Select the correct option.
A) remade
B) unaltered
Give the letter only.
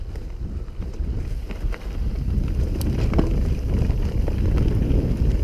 B